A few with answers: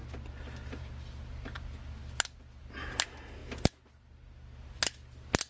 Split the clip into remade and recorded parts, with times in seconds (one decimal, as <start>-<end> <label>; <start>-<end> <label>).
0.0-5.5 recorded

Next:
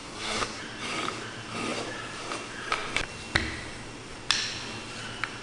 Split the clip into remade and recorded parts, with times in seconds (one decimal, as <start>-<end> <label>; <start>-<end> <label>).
0.0-0.6 remade; 0.6-5.4 recorded

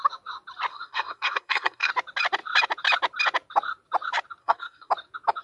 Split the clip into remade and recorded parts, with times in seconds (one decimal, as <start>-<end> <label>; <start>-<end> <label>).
0.0-0.7 recorded; 0.7-1.9 remade; 1.9-4.4 recorded; 4.4-4.9 remade; 4.9-5.4 recorded

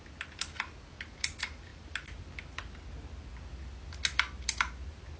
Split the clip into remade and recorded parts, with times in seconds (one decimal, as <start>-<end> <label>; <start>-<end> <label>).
0.0-5.2 recorded